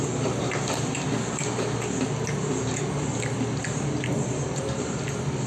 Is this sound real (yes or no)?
yes